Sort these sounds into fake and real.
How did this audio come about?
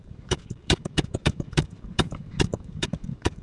fake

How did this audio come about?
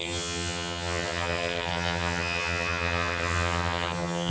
fake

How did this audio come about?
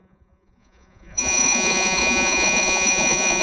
fake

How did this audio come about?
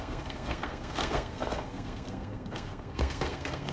fake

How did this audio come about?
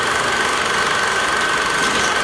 real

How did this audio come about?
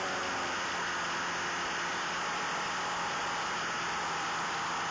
fake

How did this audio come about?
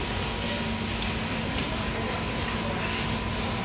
real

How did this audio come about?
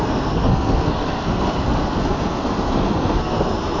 fake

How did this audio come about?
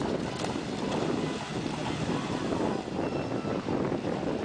real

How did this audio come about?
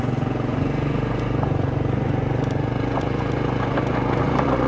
fake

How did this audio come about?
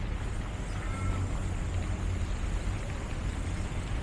real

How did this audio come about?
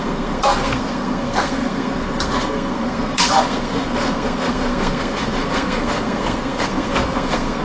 fake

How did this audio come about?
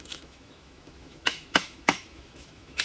fake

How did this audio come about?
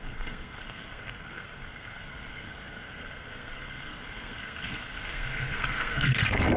fake